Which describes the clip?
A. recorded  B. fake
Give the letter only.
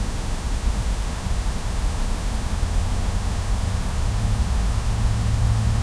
B